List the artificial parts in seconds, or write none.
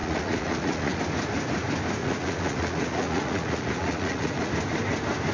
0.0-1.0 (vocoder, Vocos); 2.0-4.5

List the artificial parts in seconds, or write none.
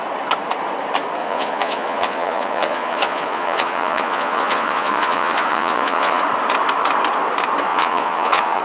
1.2-6.2 (vocoder, Vocos); 7.7-8.6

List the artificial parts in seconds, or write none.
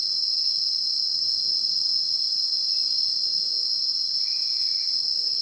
0.8-3.1 (vocoder, Vocos); 3.9-4.8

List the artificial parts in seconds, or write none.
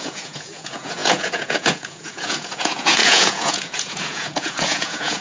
0.0-5.2 (vocoder, Vocos)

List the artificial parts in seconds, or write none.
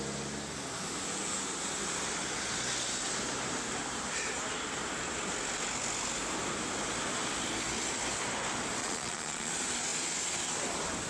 8.8-9.5 (vocoder, Vocos)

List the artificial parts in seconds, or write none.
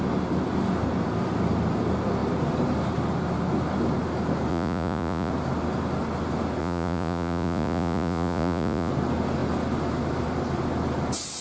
4.5-5.3 (vocoder, Vocos); 6.6-8.9